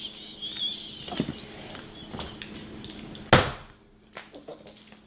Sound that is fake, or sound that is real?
real